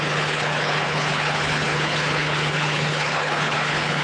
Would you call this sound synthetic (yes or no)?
yes